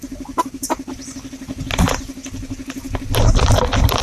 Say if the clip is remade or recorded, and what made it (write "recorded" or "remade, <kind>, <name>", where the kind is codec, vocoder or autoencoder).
recorded